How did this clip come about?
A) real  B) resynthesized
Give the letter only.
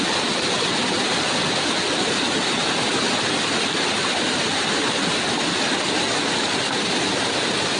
A